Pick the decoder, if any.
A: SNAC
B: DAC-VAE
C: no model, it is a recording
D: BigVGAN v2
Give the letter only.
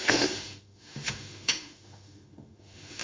B